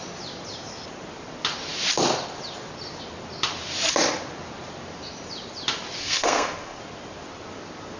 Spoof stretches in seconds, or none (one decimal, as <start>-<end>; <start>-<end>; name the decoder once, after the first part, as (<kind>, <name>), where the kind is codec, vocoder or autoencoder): 6.0-6.8 (codec, SNAC)